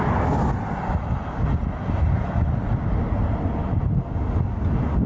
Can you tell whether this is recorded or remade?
recorded